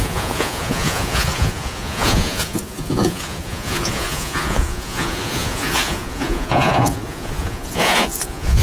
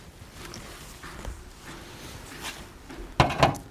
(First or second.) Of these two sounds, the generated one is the first